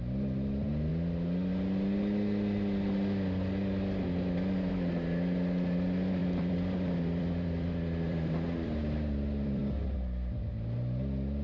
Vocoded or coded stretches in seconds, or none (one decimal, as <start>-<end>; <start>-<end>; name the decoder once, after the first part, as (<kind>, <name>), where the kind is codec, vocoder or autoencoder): 6.2-9.6 (vocoder, BigVGAN v2)